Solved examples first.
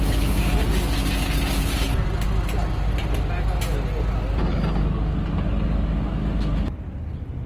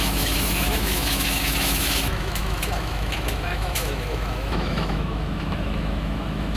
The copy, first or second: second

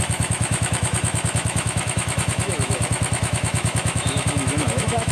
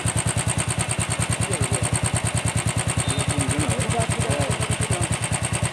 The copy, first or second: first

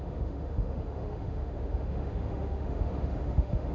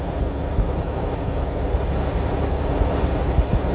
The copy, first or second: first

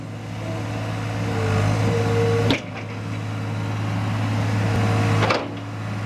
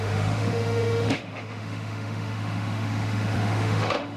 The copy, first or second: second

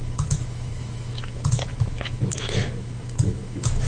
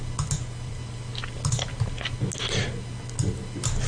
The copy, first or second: first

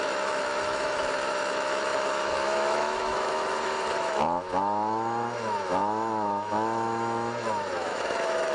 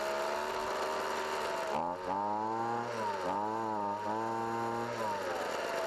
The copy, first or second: first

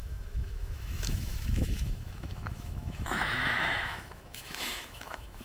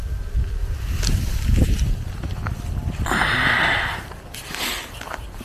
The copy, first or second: first